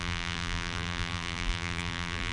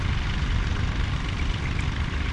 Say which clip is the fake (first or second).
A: first